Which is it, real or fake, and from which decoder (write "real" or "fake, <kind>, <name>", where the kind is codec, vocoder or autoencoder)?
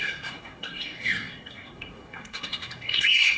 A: fake, codec, SNAC